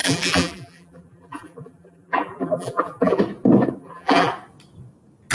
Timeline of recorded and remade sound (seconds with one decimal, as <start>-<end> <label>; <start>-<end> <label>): 0.0-3.2 remade; 3.2-3.8 recorded; 3.8-4.3 remade; 4.3-5.3 recorded